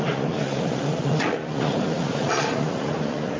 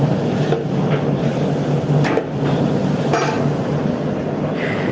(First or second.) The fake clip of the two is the first